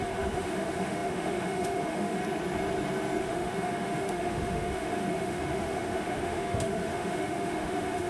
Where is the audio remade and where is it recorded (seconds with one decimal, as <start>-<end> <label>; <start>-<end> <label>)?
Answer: 0.0-2.2 remade; 2.2-3.2 recorded; 3.2-8.1 remade